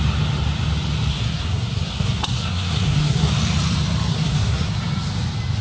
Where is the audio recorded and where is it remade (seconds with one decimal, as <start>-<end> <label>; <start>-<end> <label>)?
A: 0.0-1.1 recorded; 1.1-3.3 remade; 3.3-4.1 recorded; 4.1-4.7 remade; 4.7-5.6 recorded